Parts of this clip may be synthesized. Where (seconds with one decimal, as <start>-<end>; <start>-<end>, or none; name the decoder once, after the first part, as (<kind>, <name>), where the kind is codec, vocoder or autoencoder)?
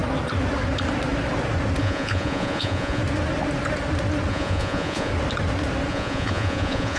1.8-3.0 (vocoder, Vocos); 4.3-5.1; 5.9-7.0